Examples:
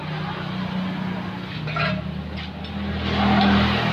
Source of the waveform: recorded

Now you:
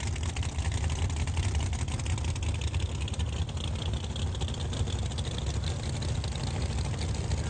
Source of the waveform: recorded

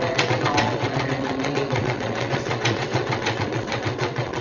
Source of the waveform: remade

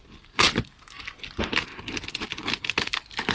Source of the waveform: recorded